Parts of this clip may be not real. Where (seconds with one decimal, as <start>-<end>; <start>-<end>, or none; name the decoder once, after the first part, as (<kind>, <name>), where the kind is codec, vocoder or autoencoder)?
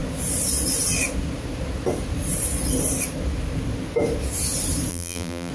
4.9-5.5 (vocoder, BigVGAN v2)